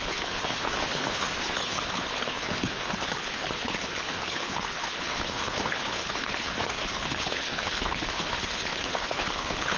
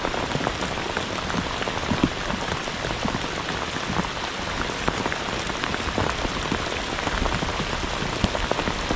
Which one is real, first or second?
second